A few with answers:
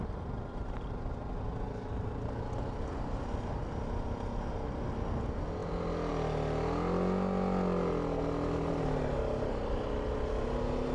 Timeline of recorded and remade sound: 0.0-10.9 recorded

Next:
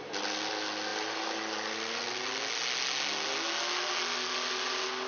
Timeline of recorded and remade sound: 0.0-5.1 recorded

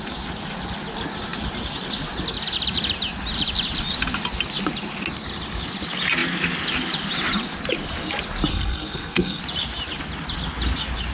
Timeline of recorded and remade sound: 0.0-8.5 recorded; 8.5-9.4 remade; 9.4-11.1 recorded

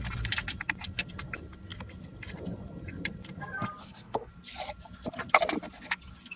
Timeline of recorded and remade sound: 0.0-3.8 recorded; 3.8-4.3 remade; 4.3-6.4 recorded

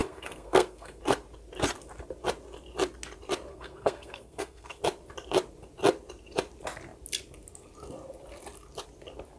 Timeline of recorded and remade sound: 0.0-1.0 remade; 1.0-3.5 recorded; 3.5-4.8 remade; 4.8-9.4 recorded

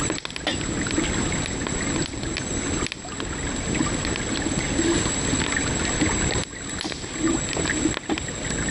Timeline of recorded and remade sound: 0.0-8.7 recorded

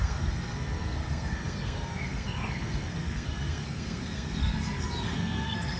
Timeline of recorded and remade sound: 0.0-5.8 remade